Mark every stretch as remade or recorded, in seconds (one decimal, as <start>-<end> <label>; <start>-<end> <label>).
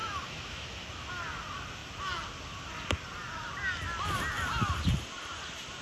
0.0-1.1 remade; 1.1-5.8 recorded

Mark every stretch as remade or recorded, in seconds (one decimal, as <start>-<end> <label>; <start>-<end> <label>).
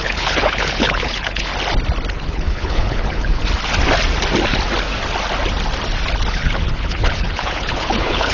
0.0-1.5 remade; 1.5-2.1 recorded; 2.1-3.4 remade; 3.4-6.3 recorded; 6.3-8.3 remade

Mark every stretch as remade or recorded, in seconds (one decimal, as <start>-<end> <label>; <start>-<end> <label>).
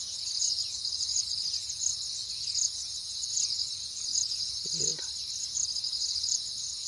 0.0-4.9 remade; 4.9-5.4 recorded; 5.4-6.9 remade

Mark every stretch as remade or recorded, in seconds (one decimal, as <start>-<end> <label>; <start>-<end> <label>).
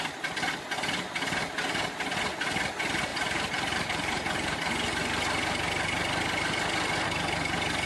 0.0-3.1 recorded; 3.1-4.7 remade; 4.7-7.9 recorded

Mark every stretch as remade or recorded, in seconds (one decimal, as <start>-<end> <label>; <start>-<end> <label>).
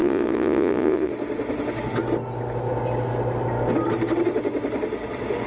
0.0-1.1 remade; 1.1-5.5 recorded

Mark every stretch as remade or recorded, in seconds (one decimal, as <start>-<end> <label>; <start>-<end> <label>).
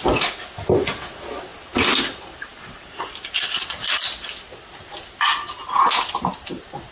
0.0-6.9 recorded